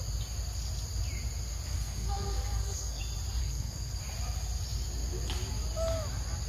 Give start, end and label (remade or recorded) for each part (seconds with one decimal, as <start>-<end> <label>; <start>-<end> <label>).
0.0-1.7 recorded; 1.7-3.0 remade; 3.0-3.4 recorded; 3.4-4.0 remade; 4.0-6.5 recorded